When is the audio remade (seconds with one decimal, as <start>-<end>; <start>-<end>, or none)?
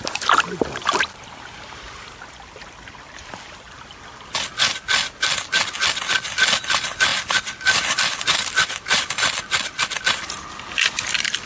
7.1-11.5